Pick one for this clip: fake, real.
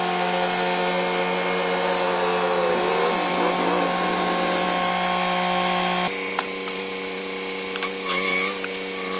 real